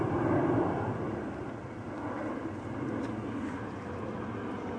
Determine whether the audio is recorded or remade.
recorded